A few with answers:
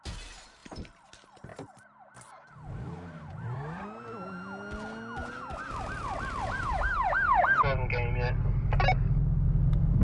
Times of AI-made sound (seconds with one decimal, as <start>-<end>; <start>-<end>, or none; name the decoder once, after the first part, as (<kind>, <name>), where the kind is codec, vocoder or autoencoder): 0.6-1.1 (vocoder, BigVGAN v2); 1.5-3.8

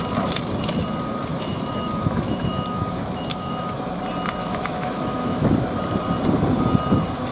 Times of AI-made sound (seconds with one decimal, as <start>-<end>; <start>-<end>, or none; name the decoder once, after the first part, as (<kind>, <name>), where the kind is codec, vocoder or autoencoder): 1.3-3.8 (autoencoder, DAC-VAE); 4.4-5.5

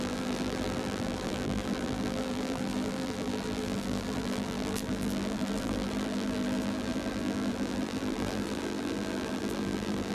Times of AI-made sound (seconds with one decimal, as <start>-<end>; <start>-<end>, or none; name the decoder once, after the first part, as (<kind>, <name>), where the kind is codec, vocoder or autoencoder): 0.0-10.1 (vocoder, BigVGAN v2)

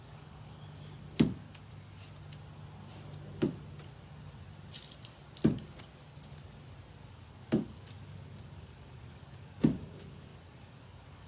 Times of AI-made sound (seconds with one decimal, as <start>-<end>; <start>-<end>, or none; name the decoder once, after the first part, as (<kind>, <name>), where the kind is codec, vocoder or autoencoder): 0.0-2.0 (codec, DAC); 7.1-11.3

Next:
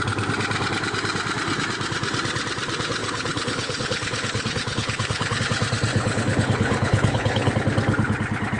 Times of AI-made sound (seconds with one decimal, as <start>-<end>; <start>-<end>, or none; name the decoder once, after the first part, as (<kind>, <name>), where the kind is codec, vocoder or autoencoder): 3.0-5.4 (codec, HILCodec); 5.9-7.5

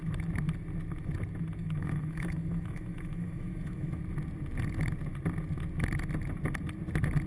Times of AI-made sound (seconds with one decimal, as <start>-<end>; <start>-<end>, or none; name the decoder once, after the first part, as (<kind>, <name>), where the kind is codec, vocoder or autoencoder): 1.6-4.0 (autoencoder, DAC-VAE)

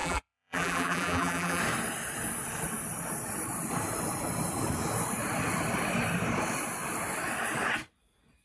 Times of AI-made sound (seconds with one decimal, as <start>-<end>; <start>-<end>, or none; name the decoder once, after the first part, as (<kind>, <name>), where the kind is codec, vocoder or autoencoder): 0.0-1.6 (vocoder, BigVGAN v2)

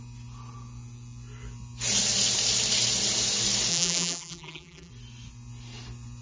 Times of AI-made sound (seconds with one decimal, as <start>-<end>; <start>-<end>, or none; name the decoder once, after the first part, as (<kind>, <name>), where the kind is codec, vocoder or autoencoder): 3.7-4.9 (vocoder, BigVGAN v2)